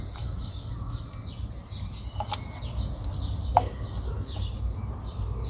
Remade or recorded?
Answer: recorded